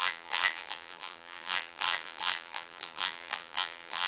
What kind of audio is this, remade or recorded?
remade